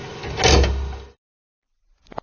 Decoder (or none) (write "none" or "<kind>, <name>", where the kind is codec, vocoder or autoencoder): none